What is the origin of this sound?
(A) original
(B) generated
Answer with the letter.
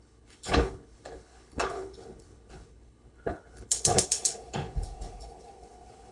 B